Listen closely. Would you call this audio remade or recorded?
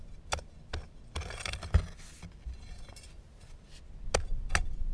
recorded